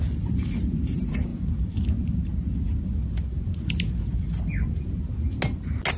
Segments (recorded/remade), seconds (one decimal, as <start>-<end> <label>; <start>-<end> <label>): 0.0-6.0 recorded